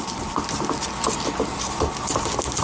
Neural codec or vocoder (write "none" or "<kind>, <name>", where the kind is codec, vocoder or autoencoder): none